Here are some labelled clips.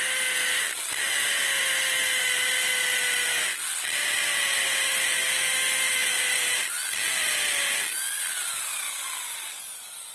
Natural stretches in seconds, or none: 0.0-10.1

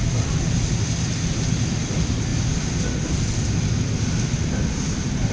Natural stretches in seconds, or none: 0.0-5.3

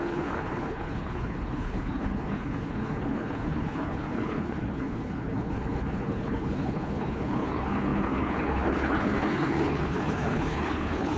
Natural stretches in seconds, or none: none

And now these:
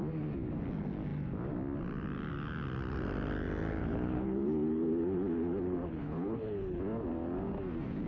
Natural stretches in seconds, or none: 0.0-3.8; 6.8-8.1

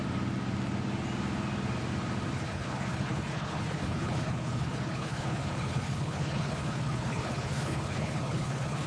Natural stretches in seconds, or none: 0.0-2.3